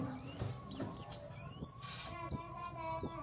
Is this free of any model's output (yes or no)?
yes